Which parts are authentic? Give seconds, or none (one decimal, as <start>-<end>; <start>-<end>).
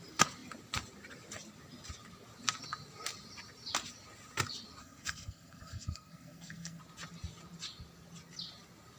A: 0.0-4.8; 6.8-9.0